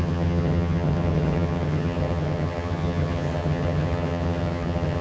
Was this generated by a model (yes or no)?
yes